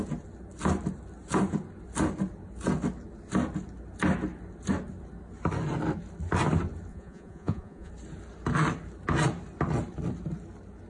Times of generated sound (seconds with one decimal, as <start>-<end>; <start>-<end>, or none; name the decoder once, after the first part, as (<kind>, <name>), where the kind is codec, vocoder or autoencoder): 6.9-7.9 (vocoder, Vocos)